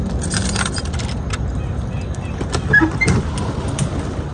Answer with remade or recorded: remade